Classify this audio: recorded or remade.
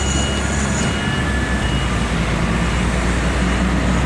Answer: recorded